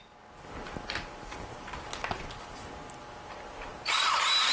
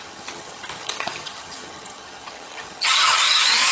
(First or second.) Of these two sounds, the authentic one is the first